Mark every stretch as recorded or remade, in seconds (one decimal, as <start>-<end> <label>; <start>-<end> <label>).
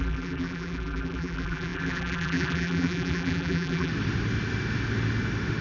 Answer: 0.0-3.9 remade; 3.9-5.6 recorded